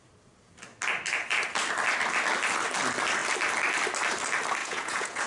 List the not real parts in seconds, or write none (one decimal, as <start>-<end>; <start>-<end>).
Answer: 4.6-5.3